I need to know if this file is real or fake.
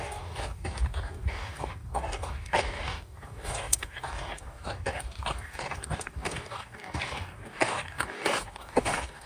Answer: fake